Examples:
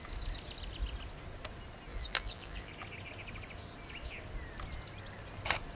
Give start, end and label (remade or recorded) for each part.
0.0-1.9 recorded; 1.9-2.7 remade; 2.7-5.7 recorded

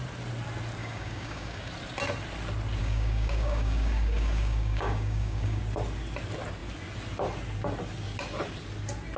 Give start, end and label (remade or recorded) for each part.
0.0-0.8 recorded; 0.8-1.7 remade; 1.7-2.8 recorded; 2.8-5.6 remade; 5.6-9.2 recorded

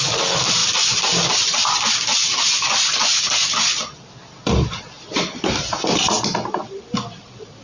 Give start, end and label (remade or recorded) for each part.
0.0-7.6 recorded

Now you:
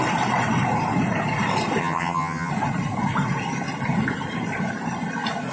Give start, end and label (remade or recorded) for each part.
0.0-1.8 recorded; 1.8-2.5 remade; 2.5-5.5 recorded

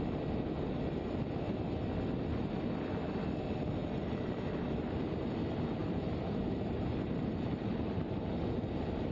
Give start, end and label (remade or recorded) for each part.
0.0-3.8 recorded; 3.8-4.5 remade; 4.5-5.8 recorded; 5.8-8.4 remade; 8.4-9.1 recorded

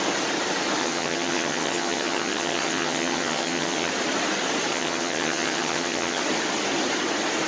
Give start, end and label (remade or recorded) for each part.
0.0-0.8 recorded; 0.8-3.9 remade; 3.9-4.7 recorded; 4.7-6.2 remade; 6.2-7.5 recorded

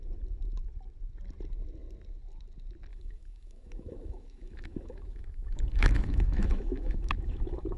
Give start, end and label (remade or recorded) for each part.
0.0-2.9 recorded; 2.9-7.8 remade